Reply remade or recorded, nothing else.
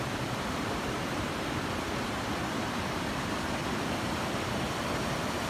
remade